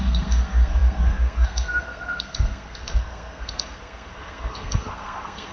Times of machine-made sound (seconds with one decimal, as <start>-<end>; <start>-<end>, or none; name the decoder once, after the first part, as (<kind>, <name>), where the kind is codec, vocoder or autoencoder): 0.0-5.5 (codec, SNAC)